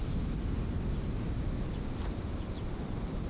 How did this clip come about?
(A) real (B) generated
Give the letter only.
A